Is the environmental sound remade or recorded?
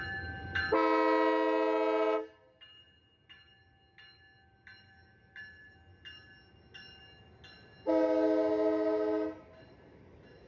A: recorded